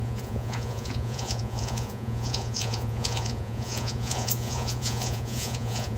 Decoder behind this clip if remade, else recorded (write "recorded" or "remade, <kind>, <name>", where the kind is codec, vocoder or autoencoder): remade, vocoder, Vocos